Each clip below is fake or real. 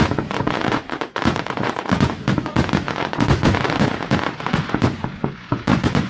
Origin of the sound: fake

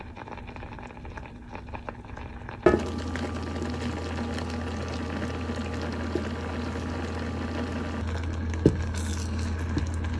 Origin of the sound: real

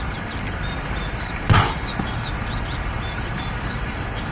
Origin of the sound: real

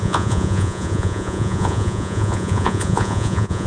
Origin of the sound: fake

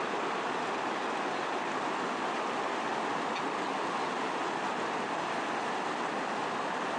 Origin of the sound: real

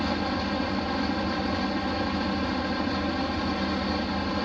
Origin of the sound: real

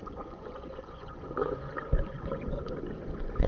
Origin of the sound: fake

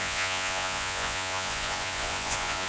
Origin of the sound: fake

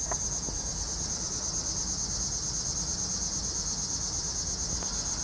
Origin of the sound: real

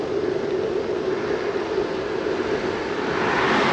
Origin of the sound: real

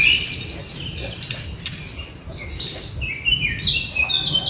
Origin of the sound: real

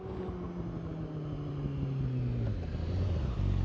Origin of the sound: real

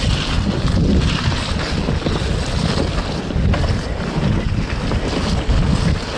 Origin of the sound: real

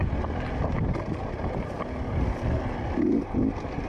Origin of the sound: real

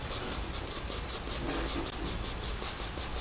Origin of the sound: real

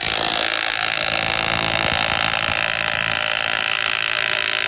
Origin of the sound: real